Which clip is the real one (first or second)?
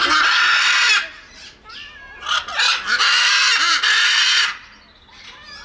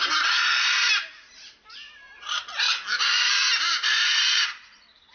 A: first